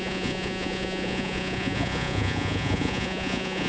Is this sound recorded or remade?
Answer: remade